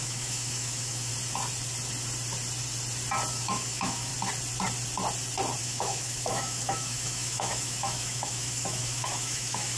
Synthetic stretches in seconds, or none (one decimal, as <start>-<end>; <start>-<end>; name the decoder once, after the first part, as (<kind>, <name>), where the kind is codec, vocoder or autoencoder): 0.0-1.1 (autoencoder, DAC-VAE); 3.3-4.1; 5.6-9.8